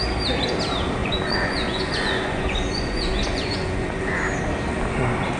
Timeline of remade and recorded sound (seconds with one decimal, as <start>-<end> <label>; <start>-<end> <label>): 0.0-1.0 recorded; 1.0-4.2 remade; 4.2-5.4 recorded